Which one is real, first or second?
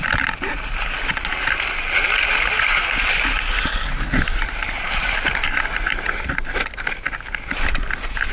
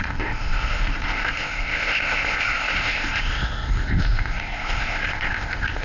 first